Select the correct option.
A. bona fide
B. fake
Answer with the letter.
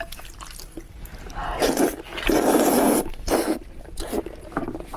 A